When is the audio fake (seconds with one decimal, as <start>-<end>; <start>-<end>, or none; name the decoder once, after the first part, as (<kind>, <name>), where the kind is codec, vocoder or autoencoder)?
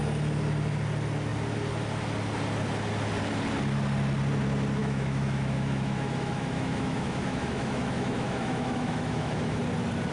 4.8-9.6 (autoencoder, DAC-VAE)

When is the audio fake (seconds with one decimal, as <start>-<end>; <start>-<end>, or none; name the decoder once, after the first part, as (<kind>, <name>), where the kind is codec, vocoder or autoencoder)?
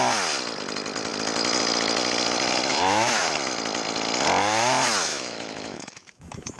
2.7-3.2 (autoencoder, DAC-VAE); 5.1-6.6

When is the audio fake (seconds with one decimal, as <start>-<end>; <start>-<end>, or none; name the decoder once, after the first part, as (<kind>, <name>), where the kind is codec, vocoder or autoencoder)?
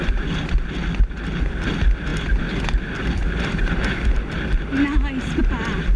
none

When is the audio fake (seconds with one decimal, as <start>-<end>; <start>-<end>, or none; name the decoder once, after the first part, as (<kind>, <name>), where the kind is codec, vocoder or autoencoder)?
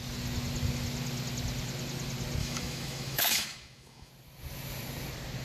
2.4-4.1 (autoencoder, DAC-VAE)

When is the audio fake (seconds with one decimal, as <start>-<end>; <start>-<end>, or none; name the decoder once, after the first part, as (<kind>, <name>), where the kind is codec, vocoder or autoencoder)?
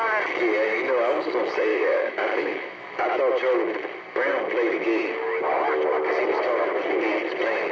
1.7-2.8 (autoencoder, DAC-VAE)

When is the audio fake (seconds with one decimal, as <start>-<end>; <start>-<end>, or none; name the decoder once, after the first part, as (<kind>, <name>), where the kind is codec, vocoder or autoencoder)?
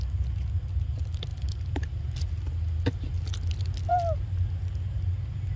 none